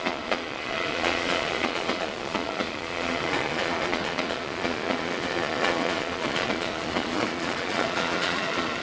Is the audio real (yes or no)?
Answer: no